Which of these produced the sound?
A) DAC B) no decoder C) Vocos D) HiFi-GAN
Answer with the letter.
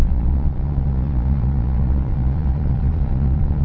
C